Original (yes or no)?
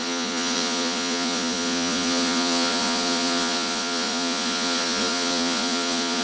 no